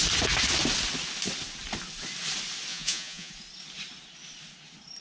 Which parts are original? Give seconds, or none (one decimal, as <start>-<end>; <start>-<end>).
0.0-2.7; 3.3-5.0

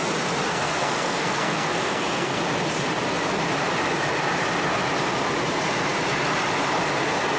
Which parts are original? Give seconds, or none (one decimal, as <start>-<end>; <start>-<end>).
0.0-0.5; 2.4-7.4

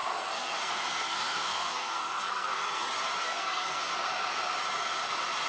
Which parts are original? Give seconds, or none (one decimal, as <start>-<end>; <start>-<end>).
2.8-3.2; 3.8-5.5